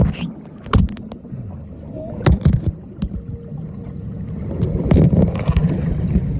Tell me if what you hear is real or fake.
real